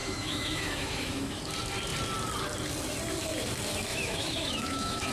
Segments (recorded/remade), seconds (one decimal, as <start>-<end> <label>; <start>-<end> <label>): 0.0-1.4 remade; 1.4-3.9 recorded; 3.9-5.1 remade